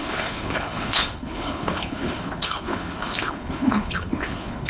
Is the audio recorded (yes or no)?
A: no